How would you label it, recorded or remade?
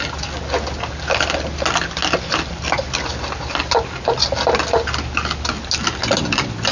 recorded